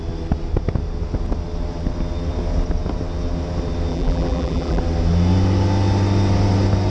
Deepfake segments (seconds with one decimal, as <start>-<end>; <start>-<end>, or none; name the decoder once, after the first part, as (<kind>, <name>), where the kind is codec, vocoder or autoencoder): 3.9-4.8 (vocoder, BigVGAN v2)